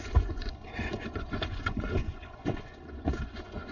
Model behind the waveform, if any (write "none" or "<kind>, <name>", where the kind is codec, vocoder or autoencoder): vocoder, Vocos